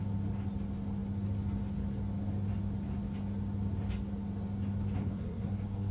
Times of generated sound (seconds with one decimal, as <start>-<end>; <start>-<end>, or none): 5.0-5.9